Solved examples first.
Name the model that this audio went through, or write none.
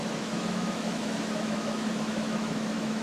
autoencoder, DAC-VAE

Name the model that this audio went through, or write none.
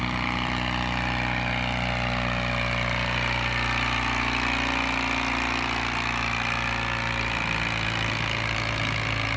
none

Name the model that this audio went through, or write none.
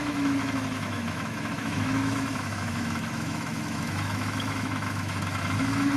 autoencoder, DAC-VAE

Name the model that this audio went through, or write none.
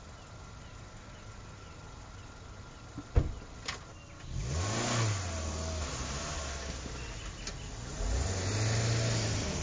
none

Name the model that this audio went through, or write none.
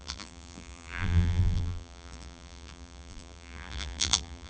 vocoder, BigVGAN v2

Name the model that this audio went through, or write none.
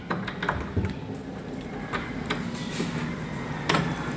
none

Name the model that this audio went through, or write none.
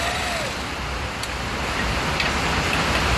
none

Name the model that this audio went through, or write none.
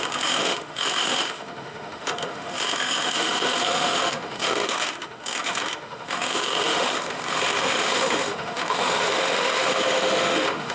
autoencoder, DAC-VAE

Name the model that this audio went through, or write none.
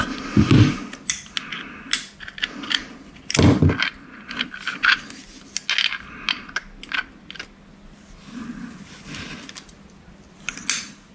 none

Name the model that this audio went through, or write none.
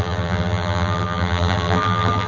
vocoder, BigVGAN v2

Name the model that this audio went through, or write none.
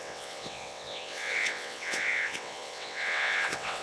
vocoder, WaveNeXt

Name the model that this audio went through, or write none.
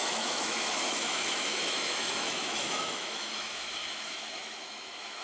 autoencoder, DAC-VAE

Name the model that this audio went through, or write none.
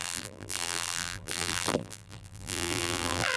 vocoder, BigVGAN v2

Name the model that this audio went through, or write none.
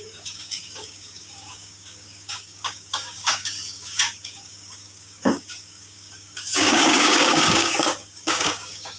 codec, DAC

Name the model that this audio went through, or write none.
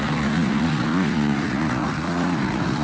vocoder, Vocos